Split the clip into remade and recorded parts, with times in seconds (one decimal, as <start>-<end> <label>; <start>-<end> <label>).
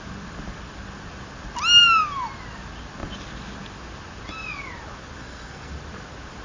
0.0-5.2 recorded; 5.2-5.7 remade; 5.7-6.4 recorded